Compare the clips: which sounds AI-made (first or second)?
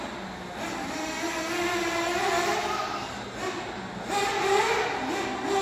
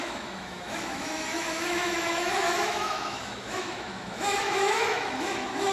second